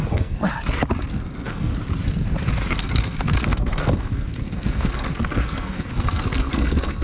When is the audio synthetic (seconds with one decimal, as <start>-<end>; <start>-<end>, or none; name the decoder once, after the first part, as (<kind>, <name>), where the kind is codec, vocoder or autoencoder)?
0.0-0.5 (codec, SNAC); 1.1-1.7; 2.7-7.0